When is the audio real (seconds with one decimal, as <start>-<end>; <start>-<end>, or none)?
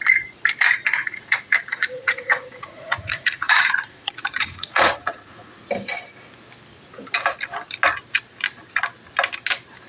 0.0-1.0; 5.6-9.9